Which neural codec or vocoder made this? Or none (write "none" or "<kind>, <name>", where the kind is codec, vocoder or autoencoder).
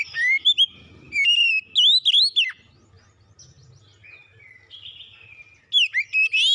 none